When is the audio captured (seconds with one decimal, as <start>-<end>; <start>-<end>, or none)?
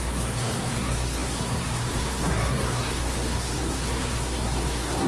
none